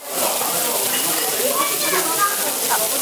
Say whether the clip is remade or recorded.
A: recorded